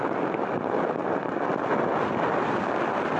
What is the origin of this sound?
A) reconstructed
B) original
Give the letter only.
B